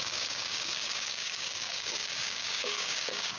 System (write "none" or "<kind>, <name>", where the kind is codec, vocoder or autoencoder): codec, DAC